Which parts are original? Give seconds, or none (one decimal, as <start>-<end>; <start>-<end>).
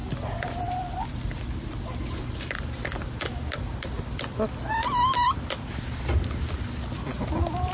0.0-7.7